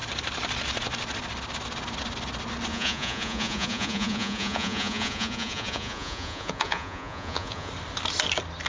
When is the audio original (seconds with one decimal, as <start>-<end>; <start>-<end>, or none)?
0.0-2.7; 7.7-8.7